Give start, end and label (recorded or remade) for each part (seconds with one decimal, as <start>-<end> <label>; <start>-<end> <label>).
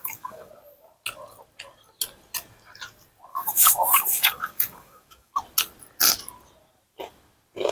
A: 0.0-0.5 remade; 0.5-3.3 recorded; 3.3-5.3 remade; 5.3-7.7 recorded